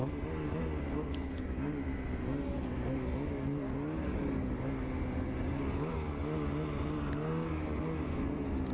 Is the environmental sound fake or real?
real